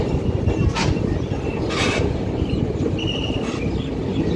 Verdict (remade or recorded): recorded